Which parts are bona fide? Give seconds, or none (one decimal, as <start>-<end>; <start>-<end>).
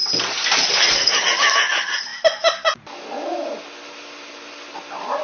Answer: 0.0-5.2